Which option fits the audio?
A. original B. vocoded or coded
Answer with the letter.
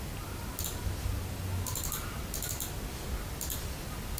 A